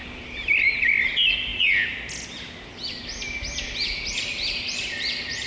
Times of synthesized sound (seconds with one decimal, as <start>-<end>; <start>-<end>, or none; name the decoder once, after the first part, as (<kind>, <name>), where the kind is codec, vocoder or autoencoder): 4.1-5.1 (vocoder, BigVGAN v2)